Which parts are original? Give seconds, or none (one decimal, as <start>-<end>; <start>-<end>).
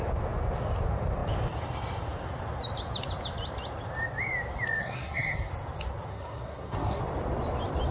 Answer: 0.0-4.8; 5.5-6.1; 7.0-7.9